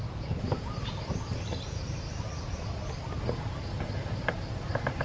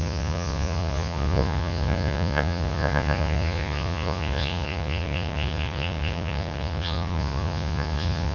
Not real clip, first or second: second